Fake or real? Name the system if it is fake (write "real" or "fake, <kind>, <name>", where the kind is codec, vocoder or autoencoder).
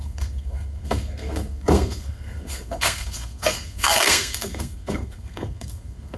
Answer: fake, codec, SNAC